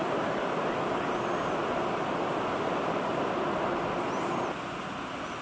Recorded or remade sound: recorded